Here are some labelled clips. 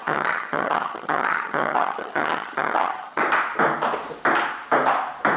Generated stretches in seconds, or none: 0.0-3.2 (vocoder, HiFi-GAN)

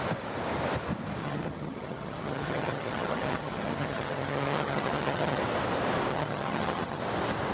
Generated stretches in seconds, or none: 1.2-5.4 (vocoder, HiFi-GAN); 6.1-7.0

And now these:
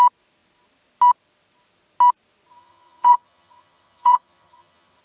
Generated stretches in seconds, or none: 2.5-5.0 (vocoder, HiFi-GAN)

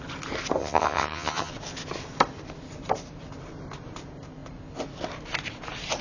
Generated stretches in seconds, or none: 0.6-1.5 (vocoder, HiFi-GAN)